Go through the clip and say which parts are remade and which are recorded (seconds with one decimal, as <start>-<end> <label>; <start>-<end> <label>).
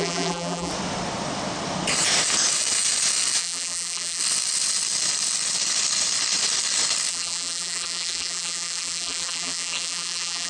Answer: 0.0-0.7 remade; 0.7-3.4 recorded; 3.4-4.2 remade; 4.2-7.1 recorded; 7.1-10.5 remade